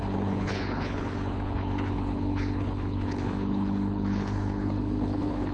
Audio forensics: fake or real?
fake